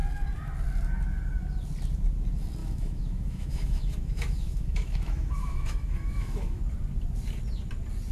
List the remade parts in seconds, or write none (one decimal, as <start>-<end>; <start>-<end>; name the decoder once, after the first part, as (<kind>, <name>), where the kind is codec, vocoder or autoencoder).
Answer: 2.6-6.6 (autoencoder, DAC-VAE)